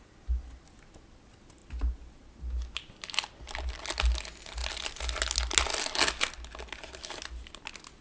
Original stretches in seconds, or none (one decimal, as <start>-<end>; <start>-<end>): 0.0-8.0